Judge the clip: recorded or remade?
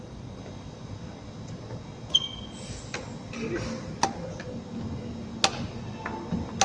recorded